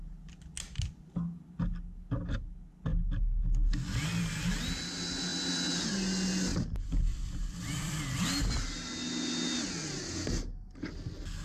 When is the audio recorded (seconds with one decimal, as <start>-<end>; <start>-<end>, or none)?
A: 0.0-6.5; 8.0-11.4